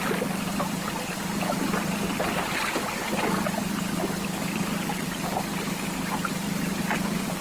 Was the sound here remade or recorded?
recorded